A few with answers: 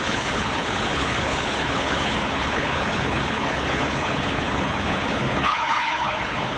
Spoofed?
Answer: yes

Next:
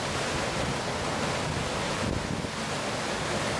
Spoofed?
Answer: no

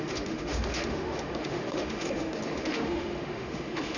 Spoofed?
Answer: yes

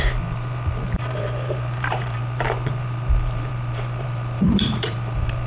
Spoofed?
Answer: yes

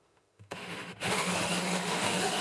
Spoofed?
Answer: yes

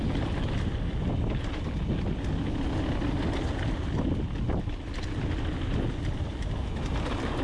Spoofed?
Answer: no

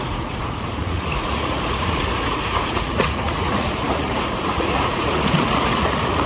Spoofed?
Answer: yes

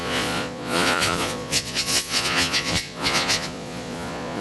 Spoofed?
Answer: yes